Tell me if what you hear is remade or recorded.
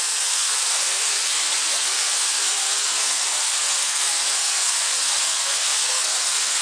remade